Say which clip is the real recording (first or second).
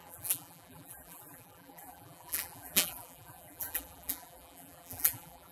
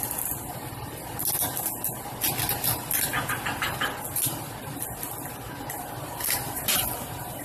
second